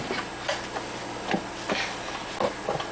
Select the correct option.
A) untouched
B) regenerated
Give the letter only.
A